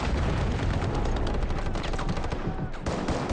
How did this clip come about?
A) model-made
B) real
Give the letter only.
B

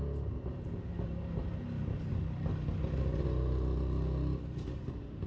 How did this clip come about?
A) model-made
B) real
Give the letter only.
B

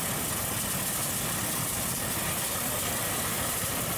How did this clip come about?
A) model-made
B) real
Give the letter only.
B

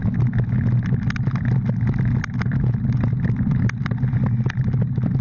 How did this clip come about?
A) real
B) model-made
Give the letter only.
A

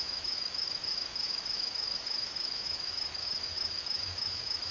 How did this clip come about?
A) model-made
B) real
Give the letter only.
A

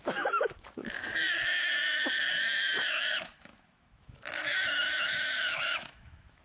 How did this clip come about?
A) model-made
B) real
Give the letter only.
A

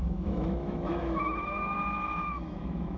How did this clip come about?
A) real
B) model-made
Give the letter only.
B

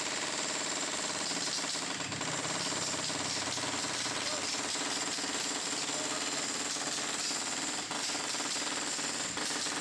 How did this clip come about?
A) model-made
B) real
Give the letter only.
B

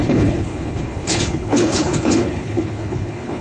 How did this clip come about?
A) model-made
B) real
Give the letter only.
A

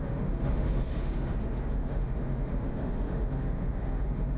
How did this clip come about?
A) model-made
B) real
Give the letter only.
A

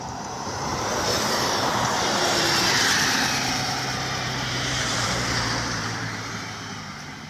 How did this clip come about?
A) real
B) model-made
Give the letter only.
B